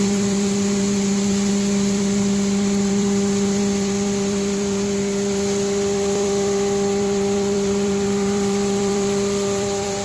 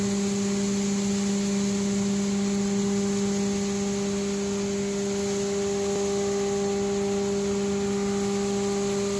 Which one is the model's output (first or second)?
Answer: first